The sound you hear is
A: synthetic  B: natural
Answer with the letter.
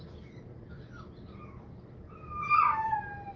B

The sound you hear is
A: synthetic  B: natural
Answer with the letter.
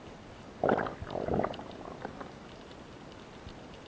B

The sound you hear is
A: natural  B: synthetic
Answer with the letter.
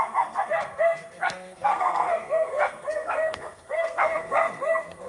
B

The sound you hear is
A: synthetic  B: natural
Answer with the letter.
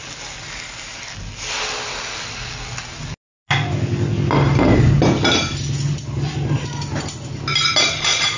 B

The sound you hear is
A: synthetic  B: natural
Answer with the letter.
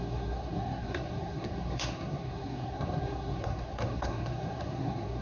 A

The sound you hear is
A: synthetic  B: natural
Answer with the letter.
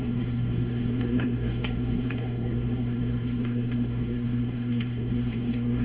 A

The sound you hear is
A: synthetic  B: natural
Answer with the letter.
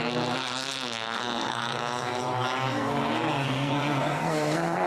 A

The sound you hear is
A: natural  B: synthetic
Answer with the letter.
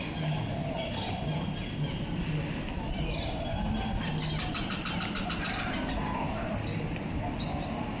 A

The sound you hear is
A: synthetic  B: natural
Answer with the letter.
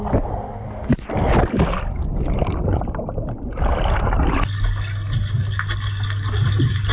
B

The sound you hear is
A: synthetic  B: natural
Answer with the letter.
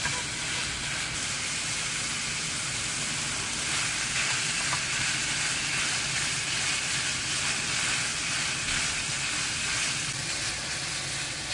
B